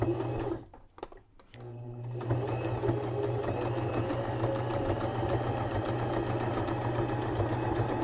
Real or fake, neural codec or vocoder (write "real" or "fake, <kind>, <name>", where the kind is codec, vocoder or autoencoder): real